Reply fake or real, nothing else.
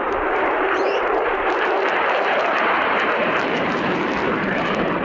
fake